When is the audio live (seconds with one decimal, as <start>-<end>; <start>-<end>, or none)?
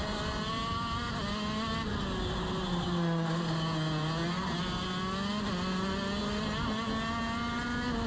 0.0-8.1